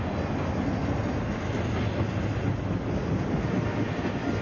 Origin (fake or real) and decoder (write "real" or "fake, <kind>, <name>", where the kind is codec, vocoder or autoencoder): real